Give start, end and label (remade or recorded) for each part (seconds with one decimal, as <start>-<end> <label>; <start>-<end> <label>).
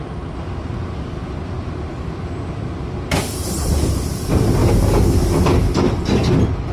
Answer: 0.0-4.6 remade; 4.6-6.7 recorded